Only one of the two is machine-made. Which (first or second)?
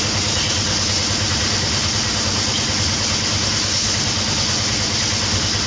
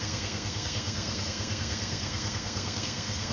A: second